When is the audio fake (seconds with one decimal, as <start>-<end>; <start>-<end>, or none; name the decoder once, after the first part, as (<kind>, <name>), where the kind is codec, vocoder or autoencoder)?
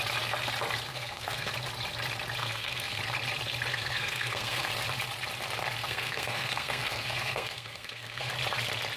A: 0.9-1.5 (codec, SNAC); 2.4-3.0; 3.7-4.7; 5.8-8.3